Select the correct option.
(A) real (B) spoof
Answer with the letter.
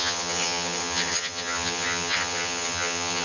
B